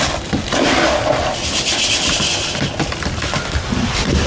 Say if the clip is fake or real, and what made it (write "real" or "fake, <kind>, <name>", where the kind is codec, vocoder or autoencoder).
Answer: fake, vocoder, BigVGAN v2